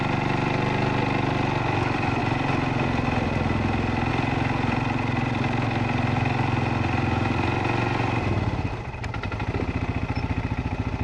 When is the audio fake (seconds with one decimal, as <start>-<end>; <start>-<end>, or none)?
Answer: 0.0-2.2; 4.1-11.0